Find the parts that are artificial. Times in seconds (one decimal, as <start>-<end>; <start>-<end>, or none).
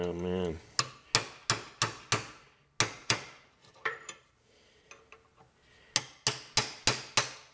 3.0-4.7